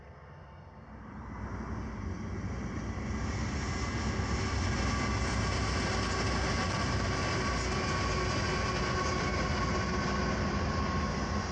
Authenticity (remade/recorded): recorded